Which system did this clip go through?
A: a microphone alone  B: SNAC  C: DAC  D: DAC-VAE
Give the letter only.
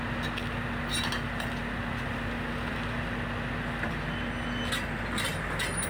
A